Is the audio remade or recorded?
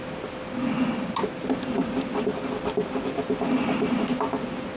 recorded